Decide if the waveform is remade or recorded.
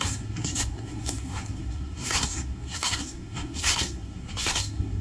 remade